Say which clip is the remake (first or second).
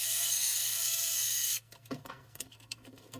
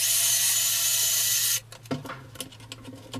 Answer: first